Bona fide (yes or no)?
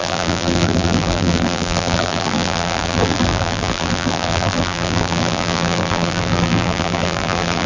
no